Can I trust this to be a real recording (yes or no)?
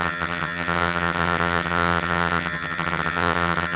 no